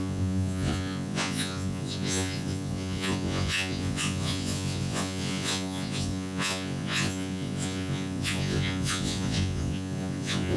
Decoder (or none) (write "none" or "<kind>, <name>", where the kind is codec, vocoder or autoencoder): vocoder, Vocos